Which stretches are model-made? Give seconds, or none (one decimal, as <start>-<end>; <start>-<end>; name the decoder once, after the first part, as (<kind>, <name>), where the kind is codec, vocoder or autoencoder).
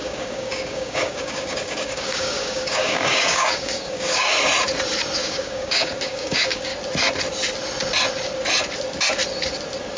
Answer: 0.0-4.3 (codec, DAC); 5.2-6.7